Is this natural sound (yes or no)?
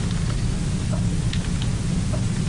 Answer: yes